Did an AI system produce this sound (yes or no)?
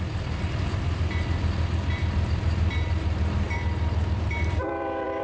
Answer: yes